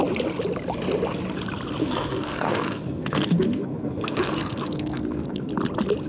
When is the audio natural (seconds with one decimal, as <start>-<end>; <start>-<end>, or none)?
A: 0.0-1.8; 5.5-6.1